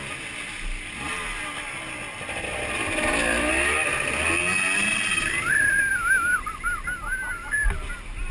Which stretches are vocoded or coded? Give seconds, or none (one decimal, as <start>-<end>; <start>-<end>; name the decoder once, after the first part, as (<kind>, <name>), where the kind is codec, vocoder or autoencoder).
2.1-3.5 (vocoder, BigVGAN v2)